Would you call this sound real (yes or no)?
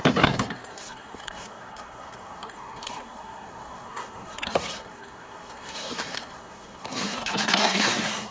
no